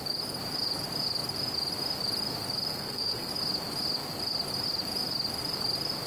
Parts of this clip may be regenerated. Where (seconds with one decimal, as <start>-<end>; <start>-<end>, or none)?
2.7-3.3